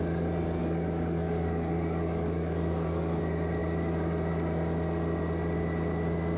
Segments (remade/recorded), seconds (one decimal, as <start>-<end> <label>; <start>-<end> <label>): 0.0-0.6 recorded; 0.6-3.2 remade; 3.2-6.4 recorded